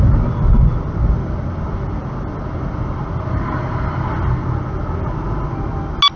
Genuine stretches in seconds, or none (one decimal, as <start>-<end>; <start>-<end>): 0.0-6.2